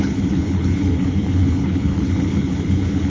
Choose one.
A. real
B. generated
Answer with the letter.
B